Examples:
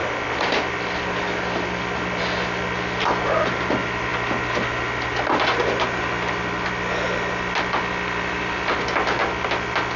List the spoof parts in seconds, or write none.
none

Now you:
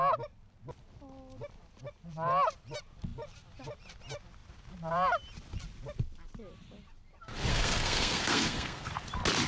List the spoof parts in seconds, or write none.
7.5-8.9 (codec, SNAC)